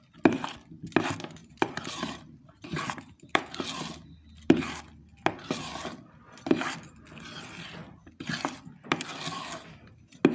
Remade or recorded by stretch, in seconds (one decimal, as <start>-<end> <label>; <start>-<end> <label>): 0.0-1.4 recorded; 1.4-3.4 remade; 3.4-10.3 recorded